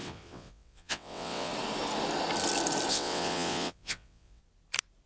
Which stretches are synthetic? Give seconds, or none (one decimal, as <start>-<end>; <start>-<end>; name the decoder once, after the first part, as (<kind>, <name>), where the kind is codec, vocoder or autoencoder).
0.0-1.5 (vocoder, WaveNeXt); 2.9-4.4

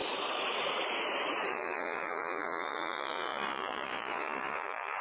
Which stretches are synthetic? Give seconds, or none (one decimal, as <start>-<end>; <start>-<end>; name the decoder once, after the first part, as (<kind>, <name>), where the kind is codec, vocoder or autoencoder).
1.5-5.0 (vocoder, Vocos)

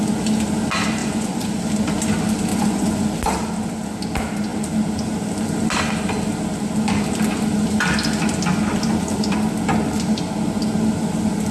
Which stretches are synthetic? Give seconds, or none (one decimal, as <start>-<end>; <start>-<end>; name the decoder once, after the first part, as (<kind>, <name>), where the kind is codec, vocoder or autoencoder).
1.0-1.5 (vocoder, Vocos); 2.5-3.0